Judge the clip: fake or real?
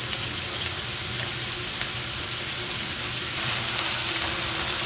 real